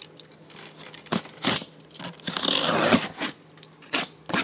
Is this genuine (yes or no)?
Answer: yes